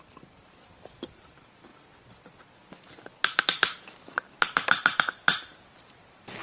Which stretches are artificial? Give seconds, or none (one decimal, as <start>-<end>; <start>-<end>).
none